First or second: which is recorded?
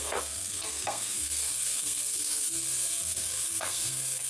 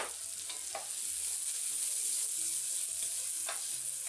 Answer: second